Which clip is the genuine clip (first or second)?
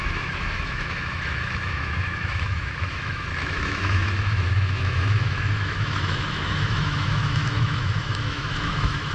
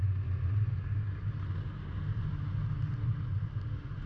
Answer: second